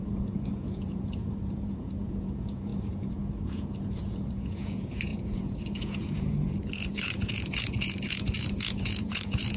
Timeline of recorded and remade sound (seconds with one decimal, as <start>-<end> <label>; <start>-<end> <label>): 0.0-9.6 remade